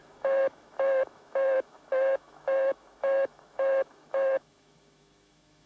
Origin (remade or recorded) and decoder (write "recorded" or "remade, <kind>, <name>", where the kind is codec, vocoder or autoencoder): remade, autoencoder, DAC-VAE